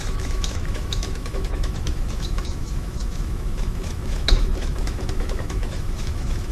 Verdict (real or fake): fake